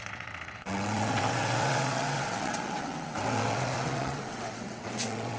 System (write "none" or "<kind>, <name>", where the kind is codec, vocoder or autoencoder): vocoder, WaveNeXt